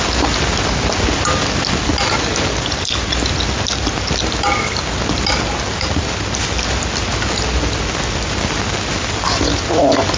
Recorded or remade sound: recorded